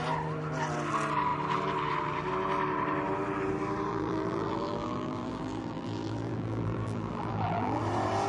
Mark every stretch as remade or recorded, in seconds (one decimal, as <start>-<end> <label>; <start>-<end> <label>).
0.0-3.9 recorded; 3.9-7.8 remade; 7.8-8.3 recorded